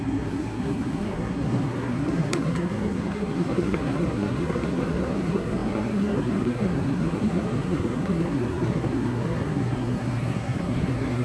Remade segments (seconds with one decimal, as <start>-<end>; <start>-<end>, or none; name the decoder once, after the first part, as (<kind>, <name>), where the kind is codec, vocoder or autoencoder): 0.0-11.2 (codec, SNAC)